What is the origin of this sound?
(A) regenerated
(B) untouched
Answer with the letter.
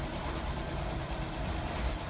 A